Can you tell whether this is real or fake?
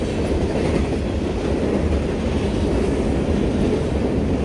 real